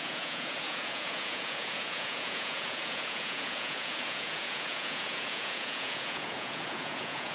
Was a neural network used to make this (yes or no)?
yes